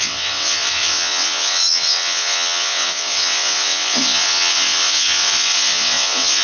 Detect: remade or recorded remade